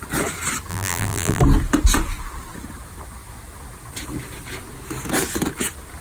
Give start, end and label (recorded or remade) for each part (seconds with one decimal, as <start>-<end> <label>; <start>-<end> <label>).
0.0-0.7 recorded; 0.7-1.4 remade; 1.4-6.0 recorded